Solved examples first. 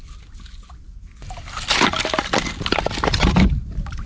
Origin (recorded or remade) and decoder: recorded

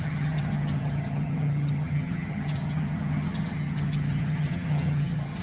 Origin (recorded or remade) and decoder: remade, vocoder, HiFi-GAN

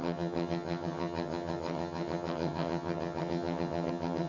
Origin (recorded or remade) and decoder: remade, vocoder, HiFi-GAN